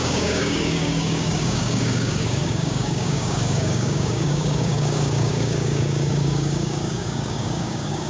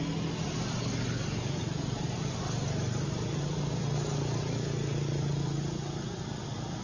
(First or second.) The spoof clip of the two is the first